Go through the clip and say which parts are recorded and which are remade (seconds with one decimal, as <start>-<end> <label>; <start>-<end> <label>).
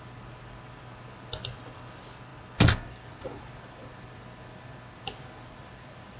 0.0-6.2 recorded